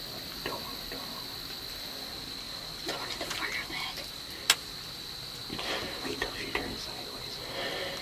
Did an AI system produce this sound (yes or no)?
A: no